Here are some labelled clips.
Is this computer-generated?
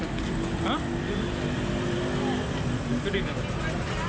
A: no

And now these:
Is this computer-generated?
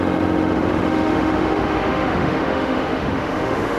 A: yes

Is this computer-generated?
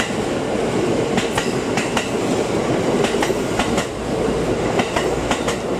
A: no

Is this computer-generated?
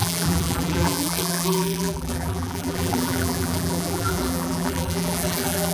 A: yes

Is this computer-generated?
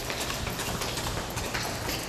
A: no